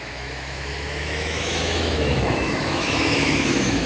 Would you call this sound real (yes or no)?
no